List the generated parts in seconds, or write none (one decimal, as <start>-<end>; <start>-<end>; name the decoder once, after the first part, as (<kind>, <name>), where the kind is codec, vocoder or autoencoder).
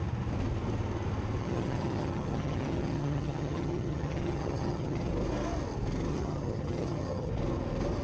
1.4-5.1 (vocoder, HiFi-GAN); 6.1-7.3